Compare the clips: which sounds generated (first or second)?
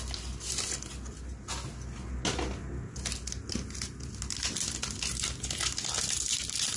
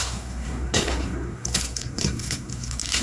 second